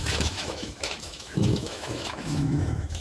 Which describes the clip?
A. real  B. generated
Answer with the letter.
B